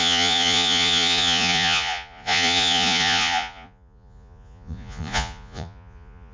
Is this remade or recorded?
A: remade